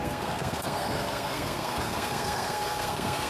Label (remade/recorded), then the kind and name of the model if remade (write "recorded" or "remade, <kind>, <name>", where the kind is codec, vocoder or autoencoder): remade, codec, SNAC